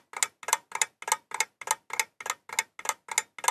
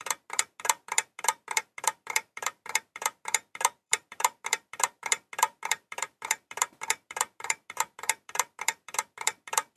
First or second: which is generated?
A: second